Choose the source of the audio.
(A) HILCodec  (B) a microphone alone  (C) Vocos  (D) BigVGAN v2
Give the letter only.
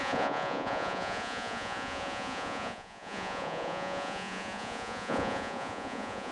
C